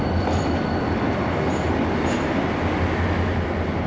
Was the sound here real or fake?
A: real